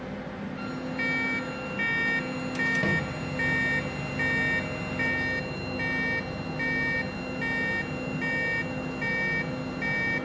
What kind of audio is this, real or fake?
real